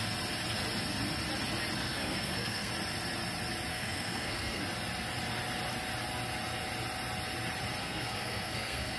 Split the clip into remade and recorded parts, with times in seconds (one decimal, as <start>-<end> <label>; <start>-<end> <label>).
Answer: 0.0-1.8 recorded; 1.8-2.7 remade; 2.7-3.7 recorded; 3.7-4.6 remade; 4.6-7.8 recorded; 7.8-9.0 remade